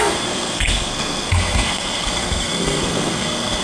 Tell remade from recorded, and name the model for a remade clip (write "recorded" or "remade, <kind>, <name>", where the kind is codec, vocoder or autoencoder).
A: remade, codec, SNAC